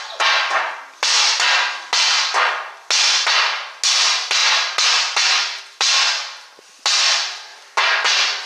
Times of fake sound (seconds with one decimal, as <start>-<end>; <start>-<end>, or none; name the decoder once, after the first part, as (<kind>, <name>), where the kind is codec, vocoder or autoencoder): none